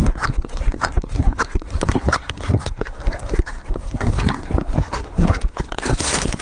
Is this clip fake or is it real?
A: fake